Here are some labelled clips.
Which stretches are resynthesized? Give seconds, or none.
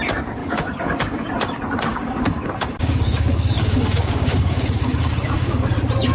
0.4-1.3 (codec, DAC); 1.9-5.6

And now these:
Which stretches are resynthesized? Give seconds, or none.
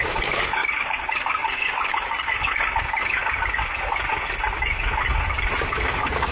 0.0-3.2 (codec, DAC); 5.8-6.3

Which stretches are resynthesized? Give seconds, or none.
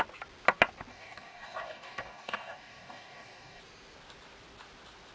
0.9-3.6 (codec, DAC)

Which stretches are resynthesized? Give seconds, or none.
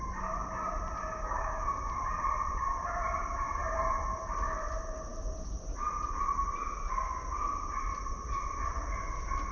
1.1-1.6 (codec, DAC)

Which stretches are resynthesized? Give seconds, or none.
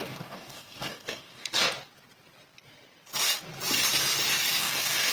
0.0-1.5 (codec, DAC); 4.6-5.1